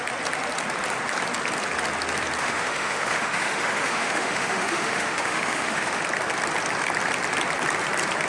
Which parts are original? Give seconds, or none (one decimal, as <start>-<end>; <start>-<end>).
0.0-2.4; 6.0-8.3